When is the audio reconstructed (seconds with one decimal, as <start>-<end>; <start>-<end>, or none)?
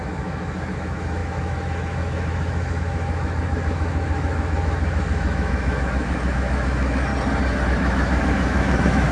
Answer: 0.0-7.1; 7.7-9.1